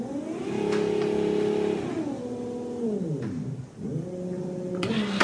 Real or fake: real